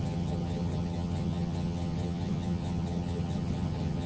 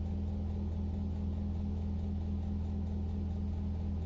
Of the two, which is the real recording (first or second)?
second